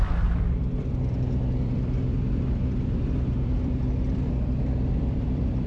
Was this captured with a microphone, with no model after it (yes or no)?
no